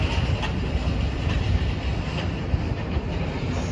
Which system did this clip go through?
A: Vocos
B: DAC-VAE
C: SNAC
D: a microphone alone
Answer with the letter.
D